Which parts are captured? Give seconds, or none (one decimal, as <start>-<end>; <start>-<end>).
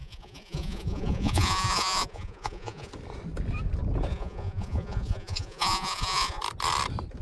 2.9-4.1; 6.4-7.2